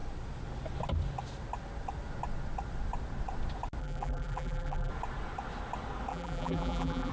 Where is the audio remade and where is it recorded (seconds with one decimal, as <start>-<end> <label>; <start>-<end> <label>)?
0.0-3.8 recorded; 3.8-4.9 remade; 4.9-6.1 recorded; 6.1-7.1 remade